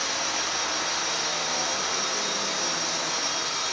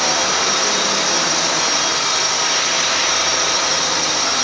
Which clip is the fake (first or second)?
second